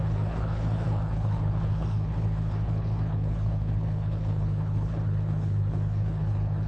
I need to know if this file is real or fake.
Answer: fake